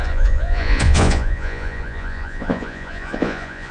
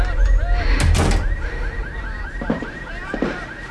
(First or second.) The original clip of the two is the second